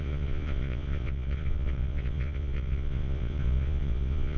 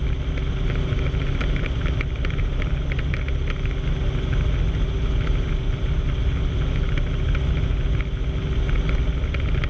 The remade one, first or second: first